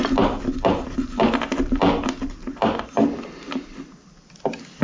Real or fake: real